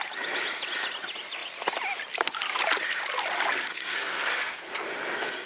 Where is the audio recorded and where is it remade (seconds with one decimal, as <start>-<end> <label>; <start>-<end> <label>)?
0.0-3.7 recorded; 3.7-4.3 remade; 4.3-5.5 recorded